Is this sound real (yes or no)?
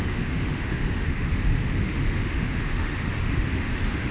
no